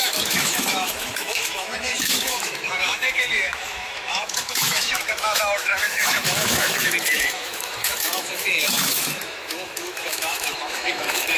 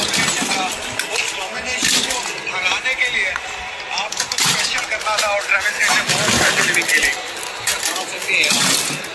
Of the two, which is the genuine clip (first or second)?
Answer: second